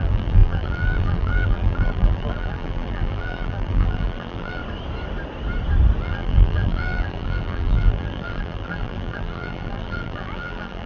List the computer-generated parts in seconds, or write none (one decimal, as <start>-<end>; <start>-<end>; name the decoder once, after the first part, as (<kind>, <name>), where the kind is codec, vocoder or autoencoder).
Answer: 0.0-4.6 (vocoder, BigVGAN v2); 6.0-10.9